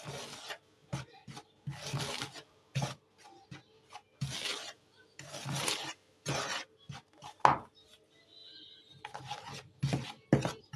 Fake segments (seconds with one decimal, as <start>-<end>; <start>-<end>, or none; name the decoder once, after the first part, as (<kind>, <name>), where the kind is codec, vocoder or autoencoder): 4.5-6.1 (vocoder, BigVGAN v2); 8.4-9.2